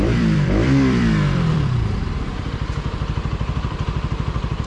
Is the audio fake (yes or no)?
yes